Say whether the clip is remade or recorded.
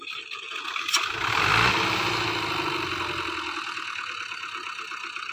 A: recorded